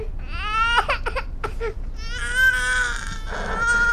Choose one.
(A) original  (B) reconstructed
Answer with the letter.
A